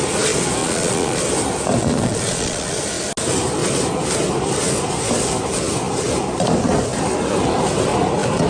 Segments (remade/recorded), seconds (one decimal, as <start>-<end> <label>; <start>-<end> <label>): 0.0-0.6 recorded; 0.6-1.2 remade; 1.2-1.8 recorded; 1.8-2.8 remade; 2.8-8.5 recorded